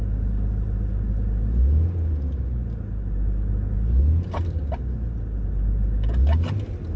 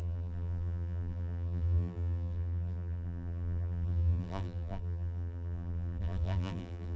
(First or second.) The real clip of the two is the first